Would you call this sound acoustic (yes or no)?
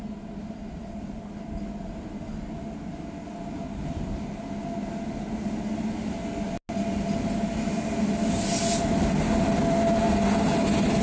yes